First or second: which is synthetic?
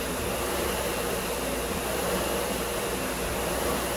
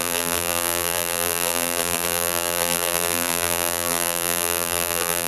second